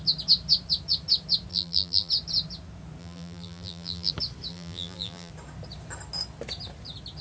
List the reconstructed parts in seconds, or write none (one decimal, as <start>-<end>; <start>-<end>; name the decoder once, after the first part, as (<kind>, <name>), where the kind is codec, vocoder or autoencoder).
1.5-2.1 (vocoder, BigVGAN v2); 3.0-4.1; 4.5-5.3

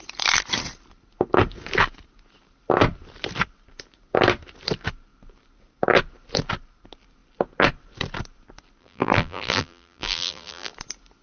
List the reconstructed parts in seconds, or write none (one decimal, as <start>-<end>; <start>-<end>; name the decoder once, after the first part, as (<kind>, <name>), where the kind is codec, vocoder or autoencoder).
8.8-10.7 (vocoder, BigVGAN v2)